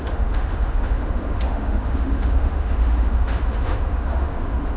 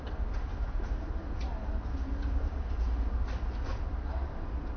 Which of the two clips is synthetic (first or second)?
first